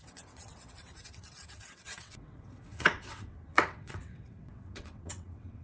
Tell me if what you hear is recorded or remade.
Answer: remade